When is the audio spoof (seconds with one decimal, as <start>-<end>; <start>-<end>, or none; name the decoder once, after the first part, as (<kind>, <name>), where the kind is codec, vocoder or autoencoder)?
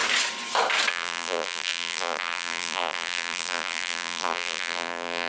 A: 0.9-5.3 (vocoder, BigVGAN v2)